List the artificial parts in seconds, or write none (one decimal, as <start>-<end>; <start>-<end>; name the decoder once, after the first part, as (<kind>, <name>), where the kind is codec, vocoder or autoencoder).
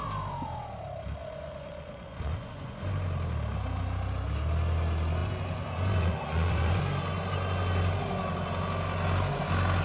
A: 1.2-2.9 (vocoder, Vocos); 5.2-6.8